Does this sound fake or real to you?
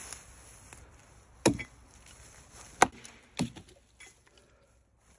real